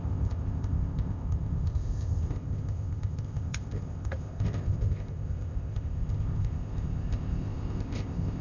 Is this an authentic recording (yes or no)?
no